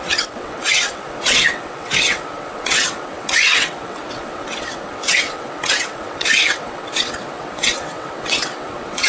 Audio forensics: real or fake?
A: fake